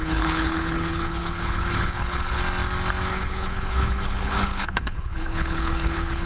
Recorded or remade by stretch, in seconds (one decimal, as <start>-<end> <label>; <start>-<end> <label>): 0.0-2.4 remade; 2.4-3.1 recorded; 3.1-6.3 remade